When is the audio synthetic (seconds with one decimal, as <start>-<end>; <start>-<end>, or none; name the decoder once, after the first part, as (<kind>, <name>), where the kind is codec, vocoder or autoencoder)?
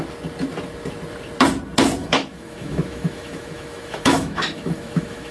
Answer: 2.0-5.3 (autoencoder, DAC-VAE)